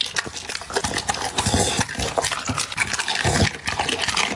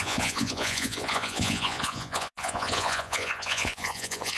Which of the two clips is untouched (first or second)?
first